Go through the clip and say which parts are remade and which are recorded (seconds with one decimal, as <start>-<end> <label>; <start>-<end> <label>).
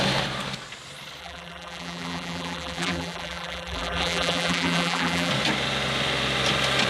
0.0-1.2 recorded; 1.2-5.3 remade; 5.3-6.9 recorded